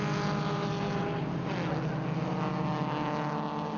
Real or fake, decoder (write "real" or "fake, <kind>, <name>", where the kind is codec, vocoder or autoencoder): real